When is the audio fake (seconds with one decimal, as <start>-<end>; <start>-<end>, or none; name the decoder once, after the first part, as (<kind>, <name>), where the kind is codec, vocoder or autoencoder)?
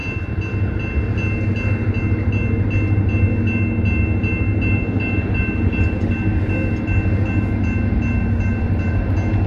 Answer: 8.5-9.0 (vocoder, BigVGAN v2)